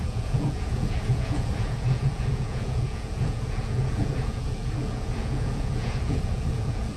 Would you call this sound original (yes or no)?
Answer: no